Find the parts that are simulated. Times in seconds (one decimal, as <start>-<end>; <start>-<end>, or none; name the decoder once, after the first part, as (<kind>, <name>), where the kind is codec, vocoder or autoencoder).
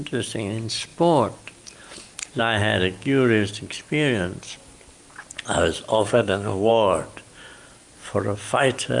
5.9-6.7 (codec, SNAC)